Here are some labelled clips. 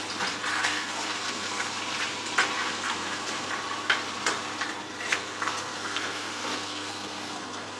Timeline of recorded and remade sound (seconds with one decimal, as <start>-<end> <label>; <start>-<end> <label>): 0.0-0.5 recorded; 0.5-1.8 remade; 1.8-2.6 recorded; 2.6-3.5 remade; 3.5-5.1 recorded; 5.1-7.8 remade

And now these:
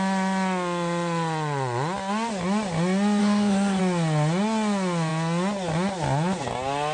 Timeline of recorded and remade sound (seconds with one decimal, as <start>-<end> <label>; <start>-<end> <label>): 0.0-3.2 recorded; 3.2-3.8 remade; 3.8-6.9 recorded

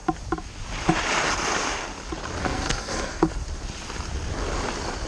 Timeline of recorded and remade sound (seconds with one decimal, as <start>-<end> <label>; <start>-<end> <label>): 0.0-2.4 recorded; 2.4-3.3 remade; 3.3-5.1 recorded

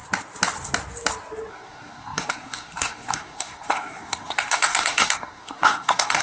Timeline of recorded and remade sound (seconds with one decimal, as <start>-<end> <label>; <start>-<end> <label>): 0.0-1.5 recorded; 1.5-6.2 remade